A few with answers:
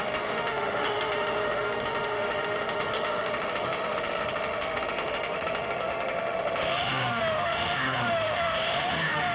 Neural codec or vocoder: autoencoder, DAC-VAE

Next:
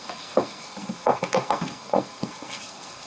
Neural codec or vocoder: codec, SNAC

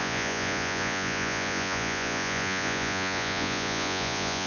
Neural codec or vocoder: vocoder, Vocos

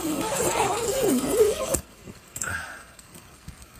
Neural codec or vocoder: codec, SNAC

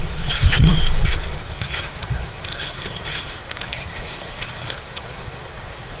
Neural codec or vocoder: codec, SNAC